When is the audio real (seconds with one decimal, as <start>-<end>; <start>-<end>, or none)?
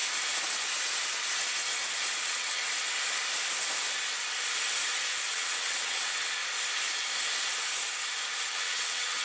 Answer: 0.0-2.2; 2.6-5.3; 6.4-8.5